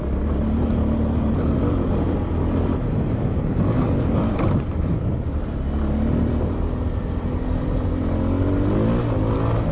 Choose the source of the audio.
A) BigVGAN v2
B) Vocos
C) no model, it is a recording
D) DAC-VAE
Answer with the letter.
C